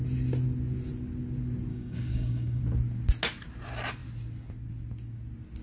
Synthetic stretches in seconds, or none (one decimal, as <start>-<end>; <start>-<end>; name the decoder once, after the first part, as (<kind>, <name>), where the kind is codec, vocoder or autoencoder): 1.7-2.6 (codec, DAC)